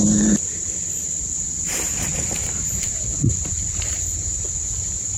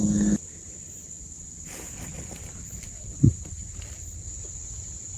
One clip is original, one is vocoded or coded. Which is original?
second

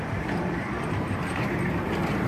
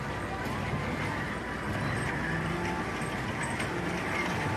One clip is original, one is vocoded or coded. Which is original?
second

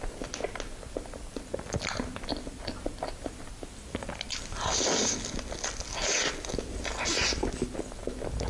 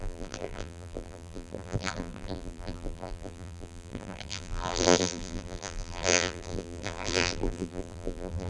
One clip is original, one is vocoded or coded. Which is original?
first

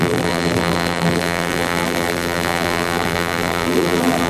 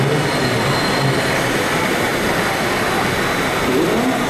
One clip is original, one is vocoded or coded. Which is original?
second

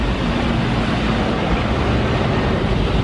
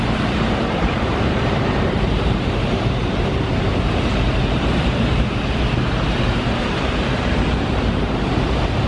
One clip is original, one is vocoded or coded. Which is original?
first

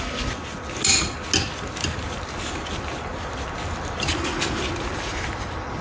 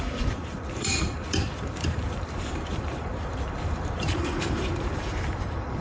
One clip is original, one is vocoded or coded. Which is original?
first